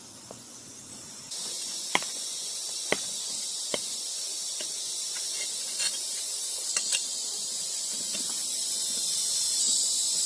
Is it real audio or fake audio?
fake